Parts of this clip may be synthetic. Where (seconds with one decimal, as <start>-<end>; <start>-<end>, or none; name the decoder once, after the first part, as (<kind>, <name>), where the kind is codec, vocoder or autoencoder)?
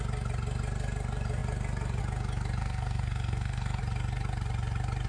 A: 2.6-3.8 (codec, SNAC)